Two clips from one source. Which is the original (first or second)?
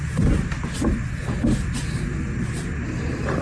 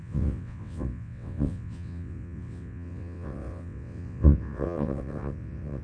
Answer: first